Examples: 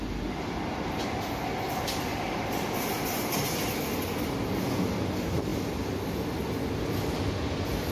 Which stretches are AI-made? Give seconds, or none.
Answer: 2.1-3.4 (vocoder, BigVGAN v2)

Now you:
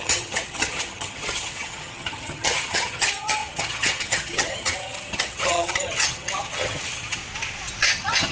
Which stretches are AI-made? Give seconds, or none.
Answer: 0.0-7.2 (vocoder, HiFi-GAN); 7.8-8.3

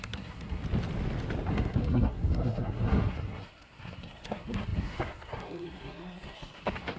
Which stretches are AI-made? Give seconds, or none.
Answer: 0.0-0.6 (codec, SNAC); 1.5-7.0

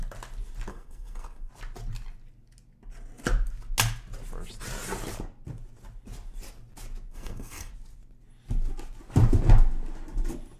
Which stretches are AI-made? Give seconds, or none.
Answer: 0.7-1.5 (codec, SNAC); 7.1-7.7

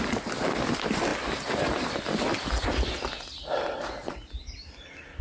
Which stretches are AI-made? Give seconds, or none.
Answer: none

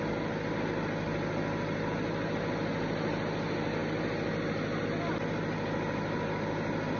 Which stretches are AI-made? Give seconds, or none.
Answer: none

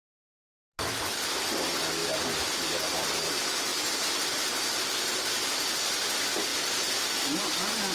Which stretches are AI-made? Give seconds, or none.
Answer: none